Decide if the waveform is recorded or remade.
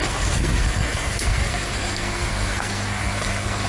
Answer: remade